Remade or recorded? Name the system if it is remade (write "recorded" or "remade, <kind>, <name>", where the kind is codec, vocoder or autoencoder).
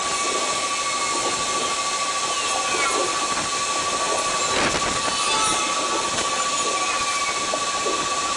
recorded